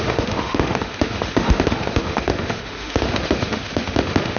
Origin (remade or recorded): remade